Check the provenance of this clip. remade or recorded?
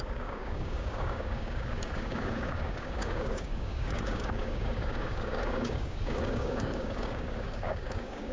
remade